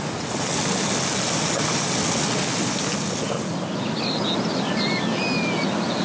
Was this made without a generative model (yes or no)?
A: yes